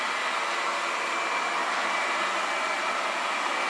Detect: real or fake real